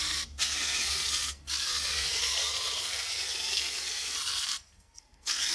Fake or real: fake